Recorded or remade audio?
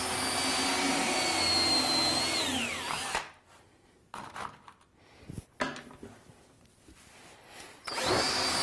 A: recorded